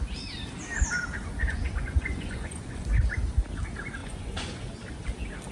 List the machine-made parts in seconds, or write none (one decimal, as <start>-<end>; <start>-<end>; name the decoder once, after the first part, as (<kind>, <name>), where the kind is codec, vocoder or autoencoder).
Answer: 1.4-3.0 (vocoder, Vocos); 4.0-4.7